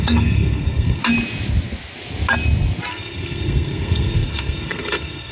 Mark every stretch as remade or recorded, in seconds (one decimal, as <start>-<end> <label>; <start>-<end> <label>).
0.0-1.0 remade; 1.0-2.9 recorded; 2.9-5.3 remade